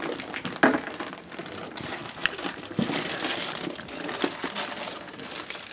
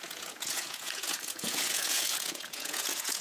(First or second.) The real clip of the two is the first